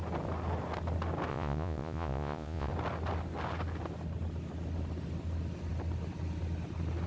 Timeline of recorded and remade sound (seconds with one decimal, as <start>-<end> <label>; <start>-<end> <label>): 0.0-1.3 recorded; 1.3-2.7 remade; 2.7-7.1 recorded